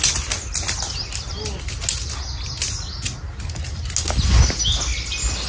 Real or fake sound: real